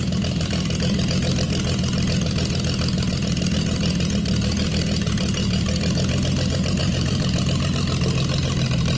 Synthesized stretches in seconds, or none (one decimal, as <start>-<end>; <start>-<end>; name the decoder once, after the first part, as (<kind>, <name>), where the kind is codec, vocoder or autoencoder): 3.1-3.8 (vocoder, BigVGAN v2); 6.8-7.4

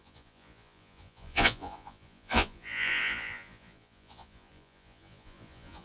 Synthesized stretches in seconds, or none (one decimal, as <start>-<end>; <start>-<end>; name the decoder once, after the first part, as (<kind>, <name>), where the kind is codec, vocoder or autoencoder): 0.0-5.8 (vocoder, Vocos)

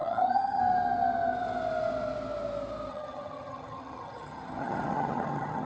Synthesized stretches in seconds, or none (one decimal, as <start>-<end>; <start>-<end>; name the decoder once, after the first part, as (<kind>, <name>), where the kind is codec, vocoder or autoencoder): 0.0-0.6 (vocoder, HiFi-GAN); 2.9-5.7

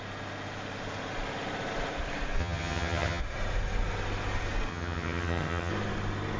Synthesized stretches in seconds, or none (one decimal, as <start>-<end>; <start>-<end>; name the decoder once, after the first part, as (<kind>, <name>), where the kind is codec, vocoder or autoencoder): 2.4-3.2 (vocoder, HiFi-GAN); 4.7-5.7

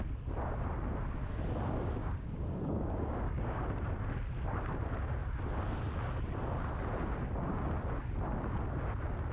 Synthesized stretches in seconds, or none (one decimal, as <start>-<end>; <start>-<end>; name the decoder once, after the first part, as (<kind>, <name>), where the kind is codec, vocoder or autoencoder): 2.0-3.6 (codec, DAC)

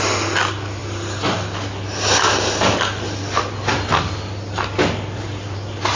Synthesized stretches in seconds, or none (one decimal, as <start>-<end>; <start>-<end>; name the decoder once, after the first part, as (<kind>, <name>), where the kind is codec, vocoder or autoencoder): none

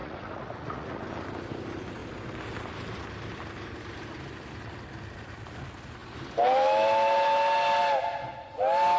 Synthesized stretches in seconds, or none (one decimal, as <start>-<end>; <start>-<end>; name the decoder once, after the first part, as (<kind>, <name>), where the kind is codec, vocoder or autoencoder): 0.0-1.0 (vocoder, Vocos)

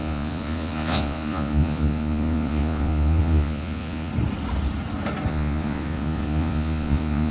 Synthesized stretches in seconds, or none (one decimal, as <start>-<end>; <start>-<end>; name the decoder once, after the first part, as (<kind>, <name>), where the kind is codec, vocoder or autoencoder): 0.0-4.1 (vocoder, Vocos); 5.3-7.3